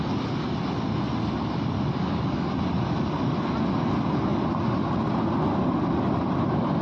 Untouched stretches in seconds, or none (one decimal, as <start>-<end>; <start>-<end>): 0.0-2.0; 2.5-6.8